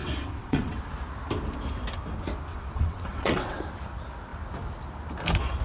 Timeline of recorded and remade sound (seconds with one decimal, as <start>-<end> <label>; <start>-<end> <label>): 0.0-0.8 remade; 0.8-2.5 recorded; 2.5-3.6 remade; 3.6-5.6 recorded